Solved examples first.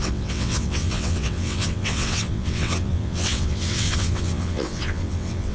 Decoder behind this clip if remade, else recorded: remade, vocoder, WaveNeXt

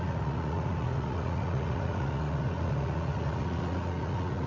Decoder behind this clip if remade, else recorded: remade, vocoder, Vocos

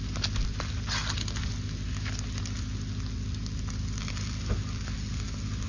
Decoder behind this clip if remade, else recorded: recorded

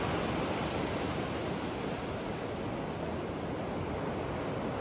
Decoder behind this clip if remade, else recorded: recorded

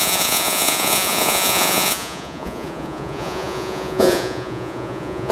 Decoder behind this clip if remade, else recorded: remade, vocoder, Vocos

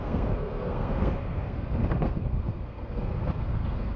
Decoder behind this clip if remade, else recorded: remade, codec, SNAC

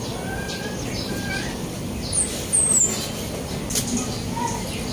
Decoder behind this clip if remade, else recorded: recorded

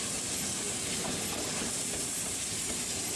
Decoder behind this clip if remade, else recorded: recorded